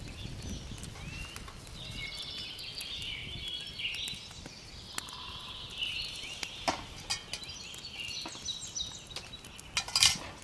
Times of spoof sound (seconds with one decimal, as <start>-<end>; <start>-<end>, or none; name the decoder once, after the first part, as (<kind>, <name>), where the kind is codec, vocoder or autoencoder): none